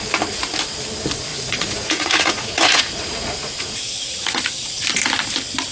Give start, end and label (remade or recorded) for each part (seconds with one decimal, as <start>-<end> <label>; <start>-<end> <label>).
0.0-1.3 recorded; 1.3-4.7 remade; 4.7-5.7 recorded